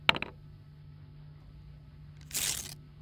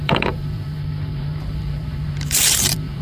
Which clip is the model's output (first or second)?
second